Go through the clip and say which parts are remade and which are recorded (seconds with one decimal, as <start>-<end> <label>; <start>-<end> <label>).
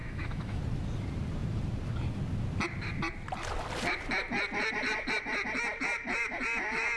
0.0-0.6 remade; 0.6-7.0 recorded